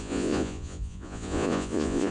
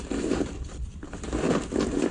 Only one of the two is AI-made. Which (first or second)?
first